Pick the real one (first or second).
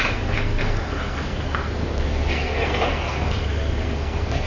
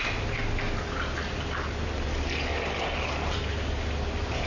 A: second